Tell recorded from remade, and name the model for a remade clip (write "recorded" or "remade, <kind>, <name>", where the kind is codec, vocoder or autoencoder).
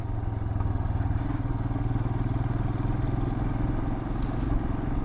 recorded